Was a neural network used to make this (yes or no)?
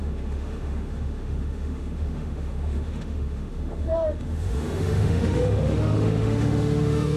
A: yes